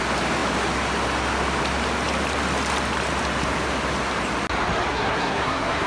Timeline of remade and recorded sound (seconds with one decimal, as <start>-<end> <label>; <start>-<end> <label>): 0.0-4.9 recorded; 4.9-5.9 remade